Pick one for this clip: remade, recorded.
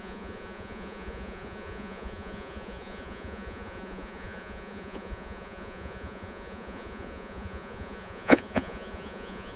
remade